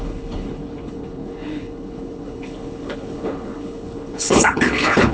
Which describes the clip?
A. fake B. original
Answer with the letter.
A